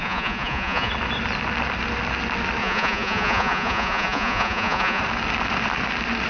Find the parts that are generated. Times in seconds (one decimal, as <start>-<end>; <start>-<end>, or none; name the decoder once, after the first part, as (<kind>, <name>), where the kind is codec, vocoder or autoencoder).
0.0-0.9 (vocoder, Vocos); 2.6-5.0